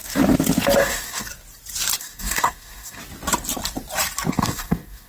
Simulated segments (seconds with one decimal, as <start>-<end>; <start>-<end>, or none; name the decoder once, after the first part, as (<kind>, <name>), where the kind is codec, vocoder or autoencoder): 0.8-1.3 (codec, DAC); 2.0-3.0; 4.3-5.1